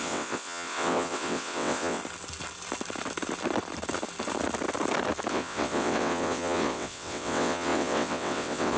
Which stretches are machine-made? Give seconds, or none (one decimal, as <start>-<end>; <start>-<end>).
0.0-2.0; 5.3-8.8